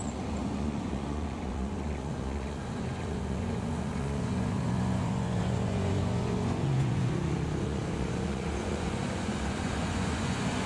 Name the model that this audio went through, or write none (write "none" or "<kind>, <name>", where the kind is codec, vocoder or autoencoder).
vocoder, Vocos